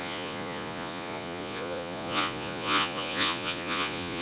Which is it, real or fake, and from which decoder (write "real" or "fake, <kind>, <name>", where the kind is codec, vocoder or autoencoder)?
fake, vocoder, Vocos